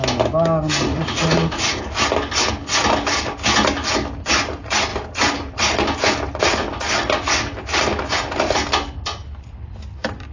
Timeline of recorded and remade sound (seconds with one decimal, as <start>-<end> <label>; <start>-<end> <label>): 0.0-0.9 recorded; 0.9-1.8 remade; 1.8-10.3 recorded